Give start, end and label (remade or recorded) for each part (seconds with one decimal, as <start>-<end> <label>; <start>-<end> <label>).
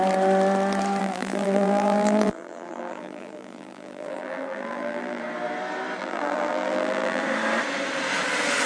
0.0-1.0 recorded; 1.0-5.2 remade; 5.2-6.0 recorded; 6.0-7.2 remade; 7.2-8.7 recorded